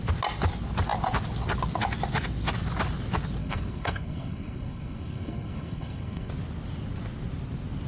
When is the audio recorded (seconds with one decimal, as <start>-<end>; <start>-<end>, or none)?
0.0-3.4; 6.3-7.9